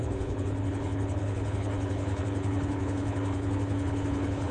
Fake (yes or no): yes